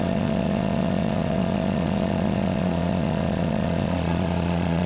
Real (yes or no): no